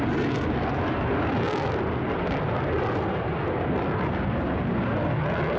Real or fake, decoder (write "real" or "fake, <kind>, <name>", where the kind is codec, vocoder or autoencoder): real